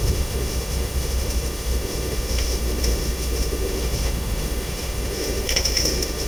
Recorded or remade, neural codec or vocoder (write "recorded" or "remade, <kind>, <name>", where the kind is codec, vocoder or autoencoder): remade, autoencoder, DAC-VAE